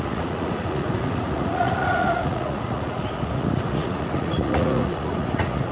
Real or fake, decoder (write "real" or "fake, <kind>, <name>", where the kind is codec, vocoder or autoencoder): fake, vocoder, Vocos